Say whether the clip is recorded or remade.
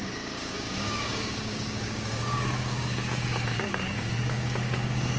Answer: remade